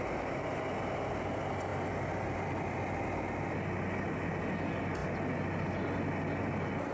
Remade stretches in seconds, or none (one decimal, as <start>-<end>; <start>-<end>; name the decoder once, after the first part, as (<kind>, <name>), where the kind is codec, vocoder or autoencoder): none